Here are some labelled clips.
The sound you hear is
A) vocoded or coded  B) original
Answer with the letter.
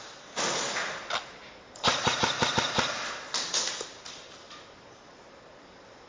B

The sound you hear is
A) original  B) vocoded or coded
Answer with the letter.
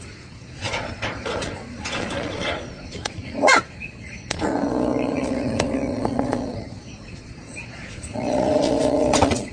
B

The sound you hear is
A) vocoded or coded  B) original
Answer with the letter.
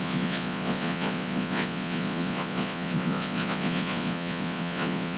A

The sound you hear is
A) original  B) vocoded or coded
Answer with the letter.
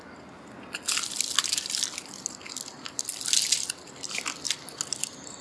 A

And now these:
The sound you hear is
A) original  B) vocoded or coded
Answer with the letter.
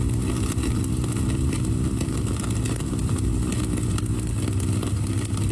A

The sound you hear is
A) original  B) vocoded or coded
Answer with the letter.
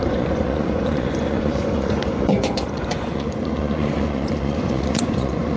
B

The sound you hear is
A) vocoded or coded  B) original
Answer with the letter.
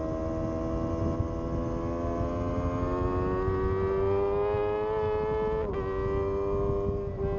B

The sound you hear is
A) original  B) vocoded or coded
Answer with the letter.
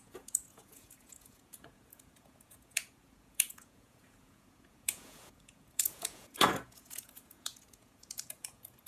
B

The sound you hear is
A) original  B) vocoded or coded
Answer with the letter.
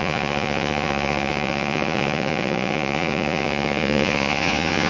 B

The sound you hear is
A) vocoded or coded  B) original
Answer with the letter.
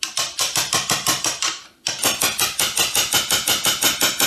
B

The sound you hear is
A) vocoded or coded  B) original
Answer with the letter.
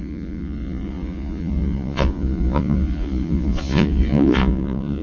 A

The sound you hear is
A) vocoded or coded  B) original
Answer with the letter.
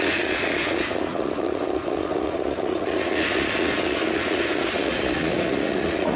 A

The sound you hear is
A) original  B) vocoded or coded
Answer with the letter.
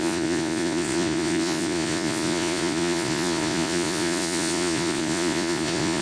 B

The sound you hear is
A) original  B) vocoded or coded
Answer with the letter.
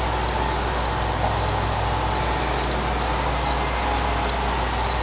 A